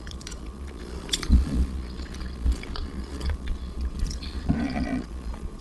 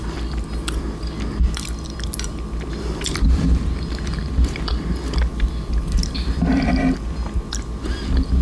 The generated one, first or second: first